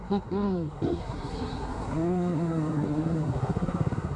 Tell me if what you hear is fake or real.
fake